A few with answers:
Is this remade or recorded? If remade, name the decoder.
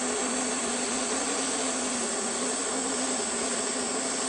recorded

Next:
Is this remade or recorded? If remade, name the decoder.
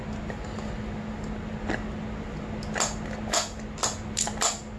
recorded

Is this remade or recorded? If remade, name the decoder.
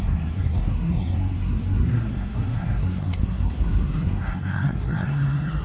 remade, codec, SNAC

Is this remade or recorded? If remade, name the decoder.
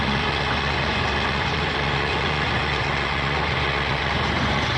remade, vocoder, Vocos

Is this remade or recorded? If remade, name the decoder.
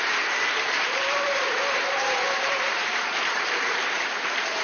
remade, vocoder, BigVGAN v2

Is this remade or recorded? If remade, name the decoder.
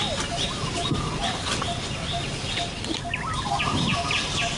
recorded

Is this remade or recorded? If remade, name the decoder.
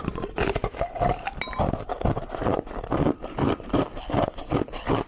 recorded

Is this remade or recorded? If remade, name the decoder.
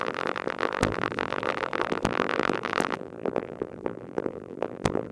remade, vocoder, BigVGAN v2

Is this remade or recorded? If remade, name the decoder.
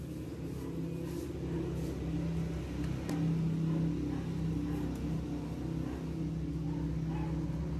recorded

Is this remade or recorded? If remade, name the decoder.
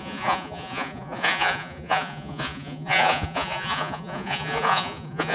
remade, vocoder, Vocos